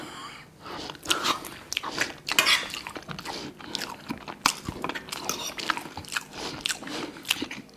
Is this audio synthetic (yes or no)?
no